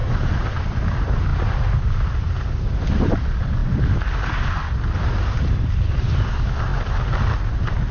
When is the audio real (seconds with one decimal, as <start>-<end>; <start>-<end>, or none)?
0.0-7.9